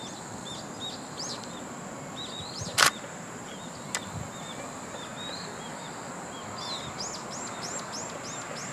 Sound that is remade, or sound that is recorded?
recorded